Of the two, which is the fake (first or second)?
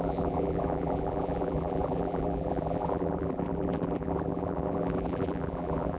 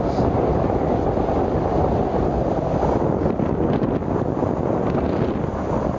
first